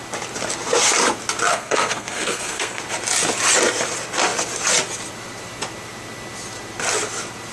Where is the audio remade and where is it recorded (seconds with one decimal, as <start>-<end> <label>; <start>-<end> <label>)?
0.0-1.5 recorded; 1.5-2.8 remade; 2.8-7.5 recorded